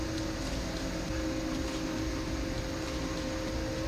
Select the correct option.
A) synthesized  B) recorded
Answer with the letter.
B